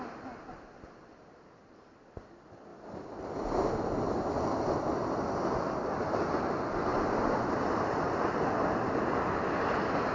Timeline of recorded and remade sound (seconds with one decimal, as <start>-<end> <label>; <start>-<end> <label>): 0.0-2.7 recorded; 2.7-3.3 remade; 3.3-10.1 recorded